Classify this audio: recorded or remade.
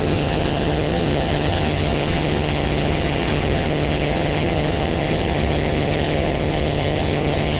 remade